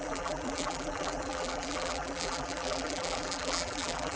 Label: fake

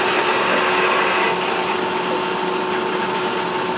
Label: real